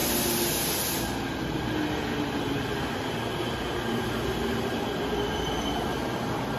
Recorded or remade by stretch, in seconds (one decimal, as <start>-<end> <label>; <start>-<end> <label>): 0.0-6.6 recorded